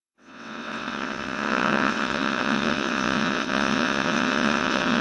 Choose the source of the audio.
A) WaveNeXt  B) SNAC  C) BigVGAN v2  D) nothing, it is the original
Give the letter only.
A